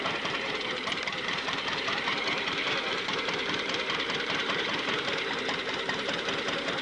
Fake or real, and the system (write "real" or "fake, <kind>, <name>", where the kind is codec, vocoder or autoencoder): fake, vocoder, BigVGAN v2